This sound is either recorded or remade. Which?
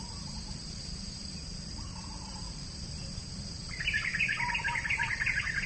remade